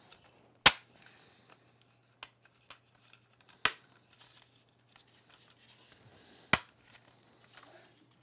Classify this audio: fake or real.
real